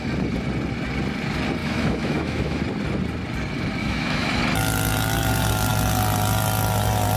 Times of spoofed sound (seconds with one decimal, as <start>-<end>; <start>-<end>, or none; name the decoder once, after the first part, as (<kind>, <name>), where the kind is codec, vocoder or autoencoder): 1.6-2.6 (autoencoder, DAC-VAE); 3.8-4.4